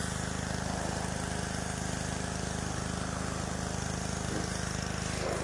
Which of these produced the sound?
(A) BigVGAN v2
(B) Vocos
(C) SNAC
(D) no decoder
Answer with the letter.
D